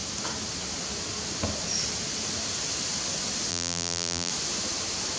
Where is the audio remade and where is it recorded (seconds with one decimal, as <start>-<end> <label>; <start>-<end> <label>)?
0.0-3.5 recorded; 3.5-4.3 remade; 4.3-5.2 recorded